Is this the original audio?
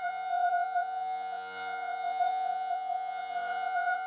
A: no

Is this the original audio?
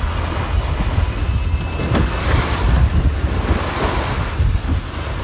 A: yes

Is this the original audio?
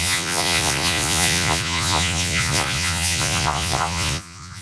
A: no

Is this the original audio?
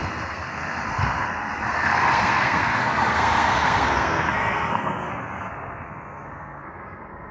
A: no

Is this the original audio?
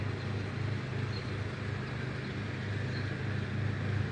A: yes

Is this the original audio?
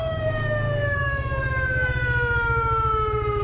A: no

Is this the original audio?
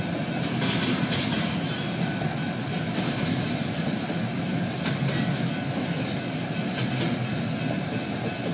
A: yes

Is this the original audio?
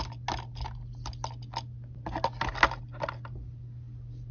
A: yes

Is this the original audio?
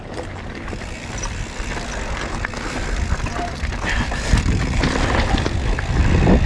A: yes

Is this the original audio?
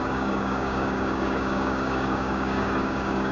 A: no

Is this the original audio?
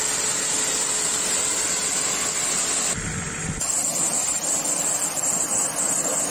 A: yes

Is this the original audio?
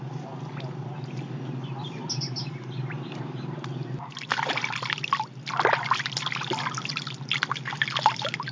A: yes